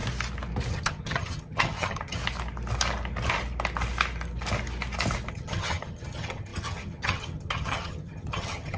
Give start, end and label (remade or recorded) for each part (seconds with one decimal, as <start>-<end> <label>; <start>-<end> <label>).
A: 0.0-0.7 recorded; 0.7-2.2 remade; 2.2-5.3 recorded; 5.3-8.8 remade